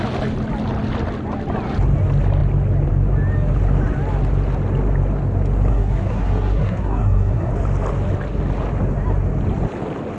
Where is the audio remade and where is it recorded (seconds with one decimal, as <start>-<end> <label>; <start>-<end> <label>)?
0.0-5.7 recorded; 5.7-7.5 remade; 7.5-10.2 recorded